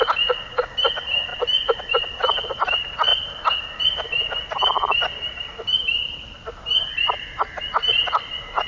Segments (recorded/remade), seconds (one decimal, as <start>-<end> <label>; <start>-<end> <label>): 0.0-8.7 remade